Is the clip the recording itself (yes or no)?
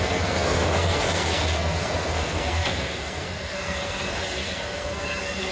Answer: no